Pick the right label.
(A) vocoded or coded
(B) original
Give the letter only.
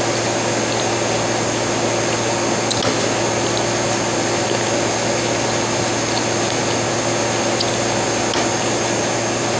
B